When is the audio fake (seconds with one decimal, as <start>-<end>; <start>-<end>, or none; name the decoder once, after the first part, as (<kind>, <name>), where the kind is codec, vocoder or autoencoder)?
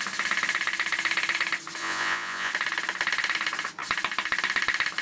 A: 1.8-2.5 (vocoder, Vocos)